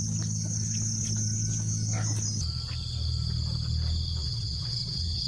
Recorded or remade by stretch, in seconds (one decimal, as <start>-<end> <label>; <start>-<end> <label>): 0.0-4.2 recorded; 4.2-5.3 remade